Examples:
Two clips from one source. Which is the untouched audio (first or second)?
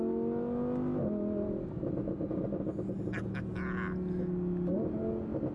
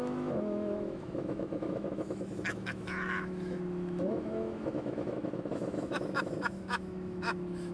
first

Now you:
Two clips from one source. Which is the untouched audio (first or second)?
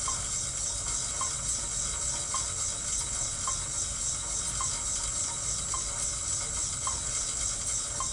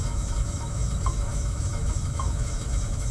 first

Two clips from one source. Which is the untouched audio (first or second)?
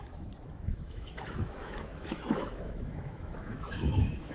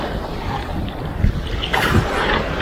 second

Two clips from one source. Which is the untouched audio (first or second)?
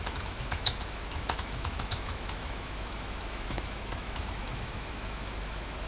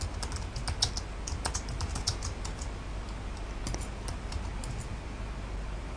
second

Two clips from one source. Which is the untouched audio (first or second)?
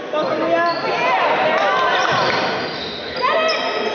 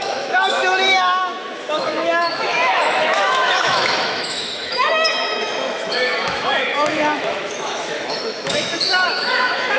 first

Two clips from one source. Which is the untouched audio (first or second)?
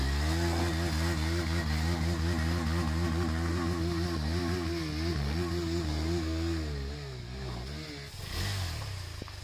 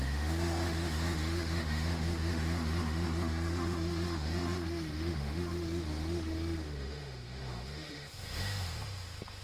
first